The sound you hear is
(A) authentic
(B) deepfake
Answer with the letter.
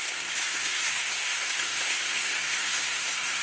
B